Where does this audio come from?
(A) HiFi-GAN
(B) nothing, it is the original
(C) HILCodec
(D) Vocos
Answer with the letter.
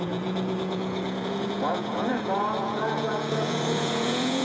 D